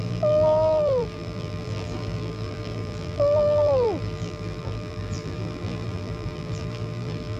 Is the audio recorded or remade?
remade